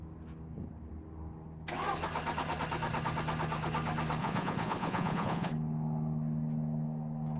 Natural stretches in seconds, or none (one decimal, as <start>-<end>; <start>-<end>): 0.0-4.2; 5.5-7.4